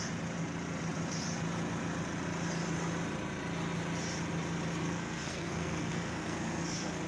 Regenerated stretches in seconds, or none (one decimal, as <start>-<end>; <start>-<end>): 4.8-7.1